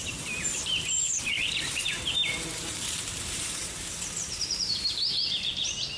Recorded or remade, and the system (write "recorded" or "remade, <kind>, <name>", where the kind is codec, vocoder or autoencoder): remade, vocoder, BigVGAN v2